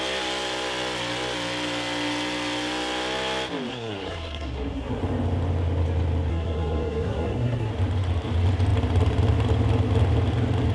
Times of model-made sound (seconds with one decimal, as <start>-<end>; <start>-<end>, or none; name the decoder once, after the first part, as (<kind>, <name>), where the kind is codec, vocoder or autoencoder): 3.7-5.0 (codec, SNAC); 6.3-7.7